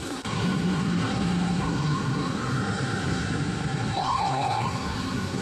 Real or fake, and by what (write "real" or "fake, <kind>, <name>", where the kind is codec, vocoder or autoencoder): fake, codec, SNAC